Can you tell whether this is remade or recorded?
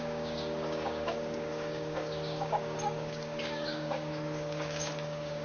remade